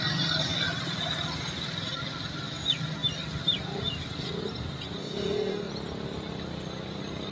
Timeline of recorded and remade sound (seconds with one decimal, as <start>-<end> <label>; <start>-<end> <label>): 0.0-5.0 recorded; 5.0-5.7 remade; 5.7-7.3 recorded